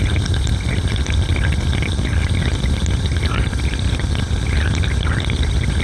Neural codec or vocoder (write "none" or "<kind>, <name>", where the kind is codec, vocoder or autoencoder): none